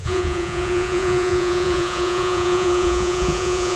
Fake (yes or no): yes